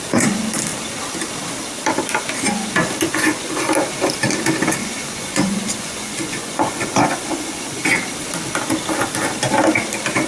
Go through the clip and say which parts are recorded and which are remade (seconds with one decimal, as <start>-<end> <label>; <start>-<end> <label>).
0.0-3.1 recorded; 3.1-3.6 remade; 3.6-4.8 recorded; 4.8-7.8 remade; 7.8-10.3 recorded